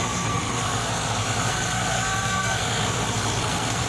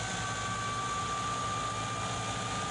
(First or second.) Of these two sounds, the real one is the second